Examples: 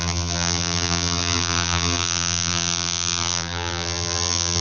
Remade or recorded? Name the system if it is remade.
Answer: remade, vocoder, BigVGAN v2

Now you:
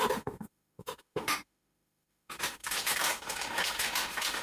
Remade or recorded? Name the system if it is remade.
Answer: remade, autoencoder, DAC-VAE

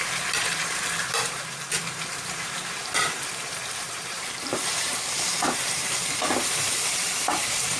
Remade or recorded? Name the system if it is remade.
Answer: remade, vocoder, BigVGAN v2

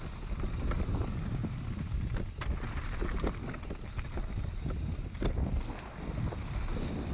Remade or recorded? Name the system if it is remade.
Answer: recorded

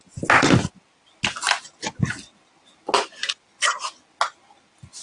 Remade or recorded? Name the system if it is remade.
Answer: recorded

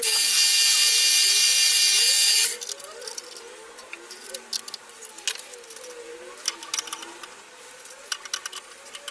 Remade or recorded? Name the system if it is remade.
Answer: recorded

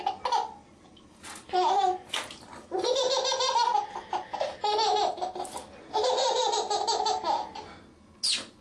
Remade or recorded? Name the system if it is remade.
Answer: recorded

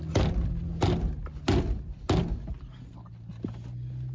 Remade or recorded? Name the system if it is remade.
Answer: recorded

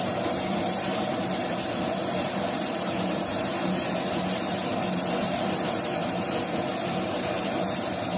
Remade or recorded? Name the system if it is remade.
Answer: remade, vocoder, BigVGAN v2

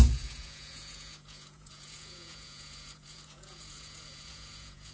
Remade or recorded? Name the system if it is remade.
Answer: remade, vocoder, Vocos